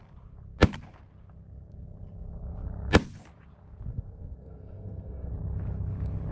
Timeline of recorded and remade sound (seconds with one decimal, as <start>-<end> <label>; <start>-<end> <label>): 0.0-3.9 recorded; 3.9-5.3 remade; 5.3-6.3 recorded